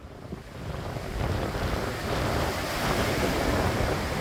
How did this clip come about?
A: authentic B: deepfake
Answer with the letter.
A